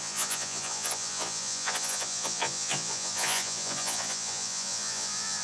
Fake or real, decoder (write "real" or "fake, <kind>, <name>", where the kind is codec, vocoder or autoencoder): fake, vocoder, Vocos